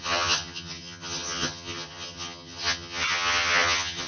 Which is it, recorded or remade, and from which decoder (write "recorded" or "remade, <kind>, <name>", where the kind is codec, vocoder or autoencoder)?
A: remade, vocoder, HiFi-GAN